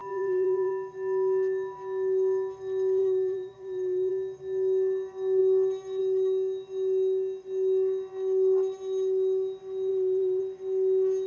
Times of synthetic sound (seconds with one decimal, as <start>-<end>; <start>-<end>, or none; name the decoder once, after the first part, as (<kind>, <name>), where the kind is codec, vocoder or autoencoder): 0.0-0.7 (vocoder, BigVGAN v2); 3.0-4.1; 9.9-10.4